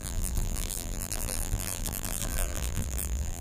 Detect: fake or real fake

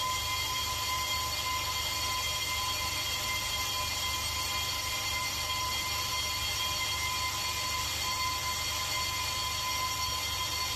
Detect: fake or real real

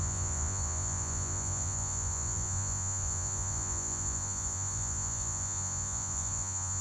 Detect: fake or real fake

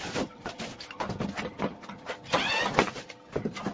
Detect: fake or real real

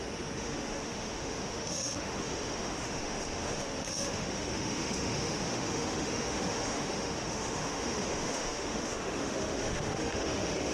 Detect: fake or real fake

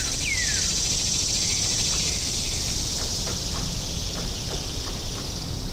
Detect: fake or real real